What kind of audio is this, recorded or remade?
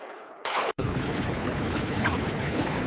remade